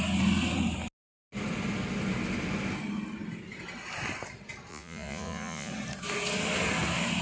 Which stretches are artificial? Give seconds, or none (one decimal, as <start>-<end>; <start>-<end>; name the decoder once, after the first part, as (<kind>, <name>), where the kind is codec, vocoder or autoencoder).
4.7-5.7 (vocoder, Vocos)